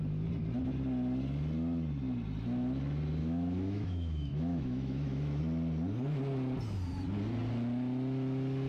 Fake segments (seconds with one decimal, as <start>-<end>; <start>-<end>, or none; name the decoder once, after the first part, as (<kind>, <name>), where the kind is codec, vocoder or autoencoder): 3.2-5.4 (autoencoder, DAC-VAE)